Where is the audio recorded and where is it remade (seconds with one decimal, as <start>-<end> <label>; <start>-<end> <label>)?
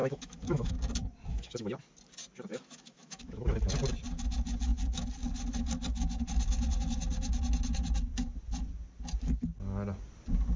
0.0-0.7 remade; 0.7-1.3 recorded; 1.3-1.8 remade; 1.8-2.5 recorded; 2.5-3.6 remade; 3.6-10.6 recorded